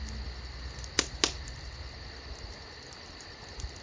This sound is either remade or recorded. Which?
recorded